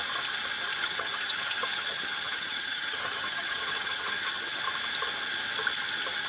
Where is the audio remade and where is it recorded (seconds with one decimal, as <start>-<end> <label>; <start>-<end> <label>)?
0.0-0.8 recorded; 0.8-4.6 remade; 4.6-6.3 recorded